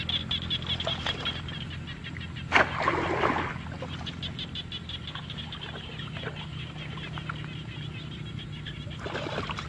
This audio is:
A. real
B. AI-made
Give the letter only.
A